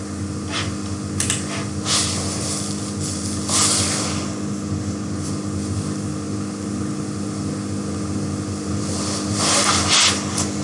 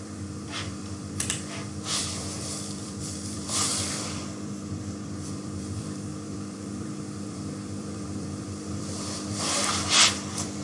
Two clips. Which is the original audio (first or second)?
first